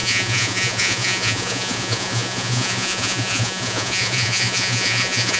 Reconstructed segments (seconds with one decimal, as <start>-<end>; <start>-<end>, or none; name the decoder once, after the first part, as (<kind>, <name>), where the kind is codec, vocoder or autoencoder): 0.0-5.4 (vocoder, Vocos)